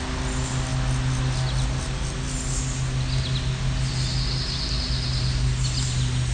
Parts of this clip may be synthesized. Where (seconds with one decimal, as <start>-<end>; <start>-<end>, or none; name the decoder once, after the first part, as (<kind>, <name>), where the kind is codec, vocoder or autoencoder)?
none